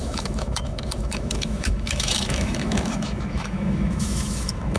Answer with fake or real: fake